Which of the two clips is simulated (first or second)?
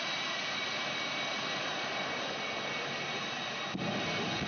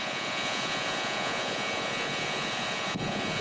second